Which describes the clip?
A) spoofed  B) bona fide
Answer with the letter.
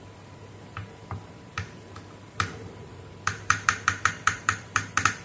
A